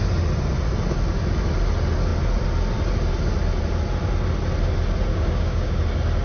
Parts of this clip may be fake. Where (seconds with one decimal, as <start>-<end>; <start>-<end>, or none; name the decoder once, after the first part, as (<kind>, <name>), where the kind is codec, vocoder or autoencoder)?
5.1-5.8 (codec, DAC)